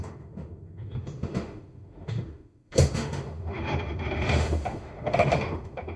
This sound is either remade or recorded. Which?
remade